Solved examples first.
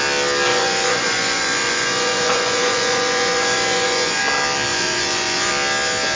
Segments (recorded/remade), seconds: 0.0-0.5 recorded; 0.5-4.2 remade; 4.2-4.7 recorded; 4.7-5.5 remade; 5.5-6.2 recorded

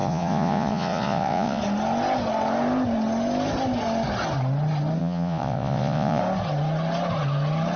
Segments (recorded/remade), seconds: 0.0-1.6 remade; 1.6-5.0 recorded; 5.0-6.2 remade; 6.2-7.8 recorded

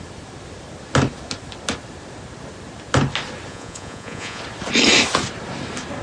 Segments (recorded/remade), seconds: 0.0-3.5 recorded; 3.5-4.4 remade; 4.4-6.0 recorded

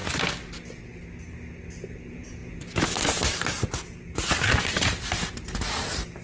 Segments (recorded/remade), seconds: 0.0-6.2 recorded

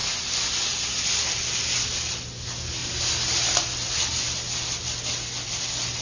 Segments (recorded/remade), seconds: 0.0-6.0 recorded

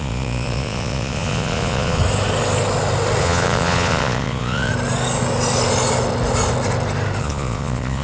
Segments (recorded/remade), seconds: 0.0-2.0 remade; 2.0-3.2 recorded; 3.2-4.7 remade; 4.7-7.2 recorded; 7.2-8.0 remade

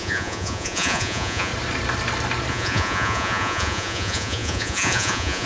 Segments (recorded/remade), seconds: 0.0-1.5 remade; 1.5-2.5 recorded; 2.5-5.5 remade

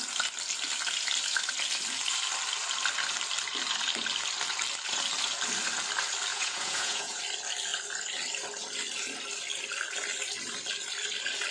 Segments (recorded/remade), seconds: 0.0-6.3 recorded; 6.3-7.2 remade; 7.2-11.5 recorded